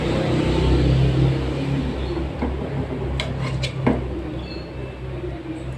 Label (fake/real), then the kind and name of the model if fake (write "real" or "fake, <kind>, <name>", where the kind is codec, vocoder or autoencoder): real